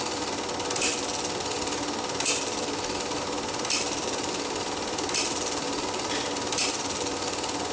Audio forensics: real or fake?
real